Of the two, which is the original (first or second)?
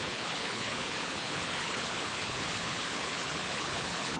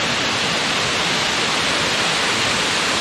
second